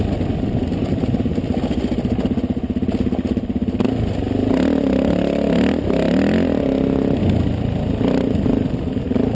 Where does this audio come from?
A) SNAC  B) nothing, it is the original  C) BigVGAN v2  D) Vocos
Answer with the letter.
B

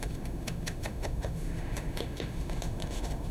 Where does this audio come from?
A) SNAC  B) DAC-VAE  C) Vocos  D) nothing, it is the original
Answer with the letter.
B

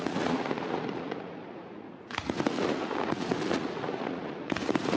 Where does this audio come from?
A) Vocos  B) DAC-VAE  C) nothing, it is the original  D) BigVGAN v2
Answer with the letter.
A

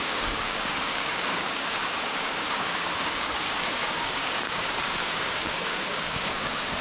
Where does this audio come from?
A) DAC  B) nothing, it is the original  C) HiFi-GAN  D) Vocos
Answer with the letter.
A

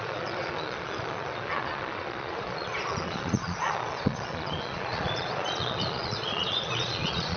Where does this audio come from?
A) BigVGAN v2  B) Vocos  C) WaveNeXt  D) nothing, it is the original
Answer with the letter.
B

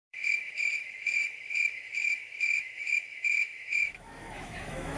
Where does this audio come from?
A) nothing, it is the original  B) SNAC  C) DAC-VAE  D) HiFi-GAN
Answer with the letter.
C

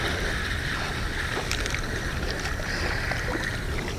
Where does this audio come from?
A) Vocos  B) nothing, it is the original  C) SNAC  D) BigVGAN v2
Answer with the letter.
B